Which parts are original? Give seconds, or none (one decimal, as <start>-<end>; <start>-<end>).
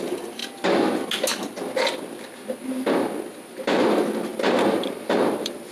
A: 0.4-3.6